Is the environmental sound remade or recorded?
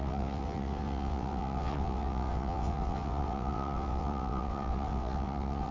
remade